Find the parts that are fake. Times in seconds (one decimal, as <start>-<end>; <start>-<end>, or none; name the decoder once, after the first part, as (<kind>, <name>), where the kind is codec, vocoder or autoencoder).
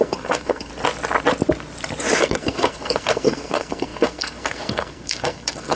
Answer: 0.0-0.7 (codec, SNAC); 2.2-5.8